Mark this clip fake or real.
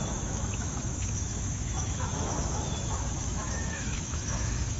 fake